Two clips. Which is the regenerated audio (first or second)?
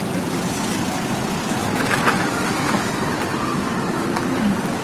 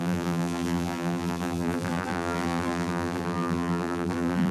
second